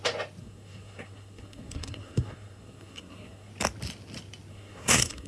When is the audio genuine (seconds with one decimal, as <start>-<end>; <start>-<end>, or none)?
0.0-0.4; 3.5-4.5